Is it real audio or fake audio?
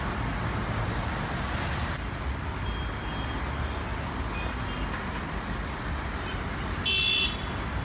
real